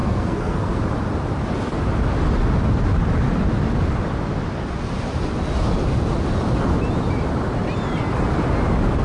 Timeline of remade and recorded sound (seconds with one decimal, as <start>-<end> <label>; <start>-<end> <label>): 0.0-0.8 remade; 0.8-9.0 recorded